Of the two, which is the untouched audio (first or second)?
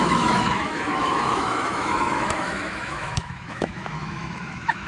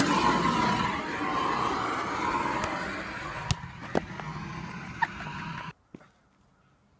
second